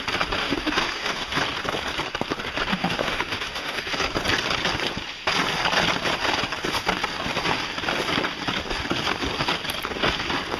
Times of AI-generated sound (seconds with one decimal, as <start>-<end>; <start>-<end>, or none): 0.4-1.4; 2.7-3.8